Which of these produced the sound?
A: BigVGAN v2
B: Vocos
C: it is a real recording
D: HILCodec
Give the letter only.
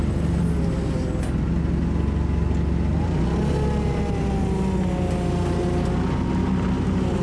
C